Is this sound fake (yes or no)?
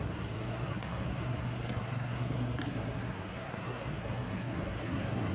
yes